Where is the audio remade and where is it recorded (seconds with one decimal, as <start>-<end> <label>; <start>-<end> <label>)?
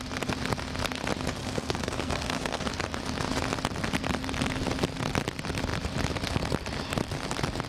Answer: 0.0-1.4 recorded; 1.4-2.6 remade; 2.6-7.7 recorded